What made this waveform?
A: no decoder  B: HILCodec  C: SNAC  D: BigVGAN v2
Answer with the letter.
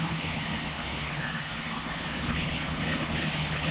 B